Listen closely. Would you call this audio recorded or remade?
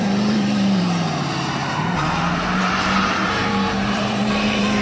remade